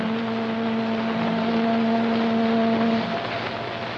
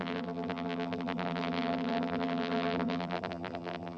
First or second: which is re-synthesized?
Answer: second